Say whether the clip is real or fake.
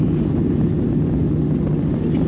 real